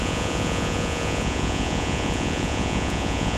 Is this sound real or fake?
fake